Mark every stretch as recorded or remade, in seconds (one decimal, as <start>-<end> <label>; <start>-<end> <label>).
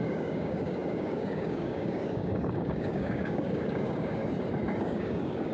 0.0-4.2 remade; 4.2-4.8 recorded; 4.8-5.5 remade